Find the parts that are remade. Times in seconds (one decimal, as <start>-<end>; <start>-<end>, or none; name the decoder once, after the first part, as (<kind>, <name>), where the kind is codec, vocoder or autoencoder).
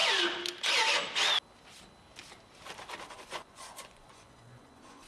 3.1-5.1 (vocoder, Vocos)